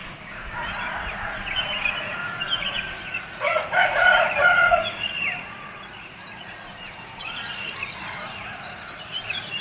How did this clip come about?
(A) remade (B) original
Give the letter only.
A